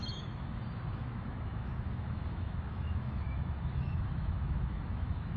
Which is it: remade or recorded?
remade